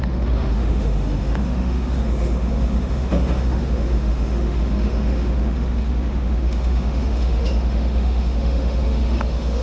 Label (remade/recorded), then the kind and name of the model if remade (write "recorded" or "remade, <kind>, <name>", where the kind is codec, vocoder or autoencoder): remade, autoencoder, DAC-VAE